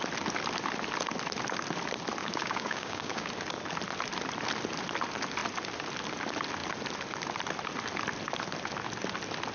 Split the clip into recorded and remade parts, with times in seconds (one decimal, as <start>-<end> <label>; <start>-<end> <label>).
0.0-2.2 recorded; 2.2-3.3 remade; 3.3-9.5 recorded